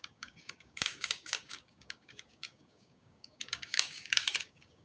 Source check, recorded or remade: remade